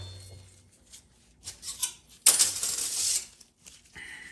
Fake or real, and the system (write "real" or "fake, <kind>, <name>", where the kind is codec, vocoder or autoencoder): real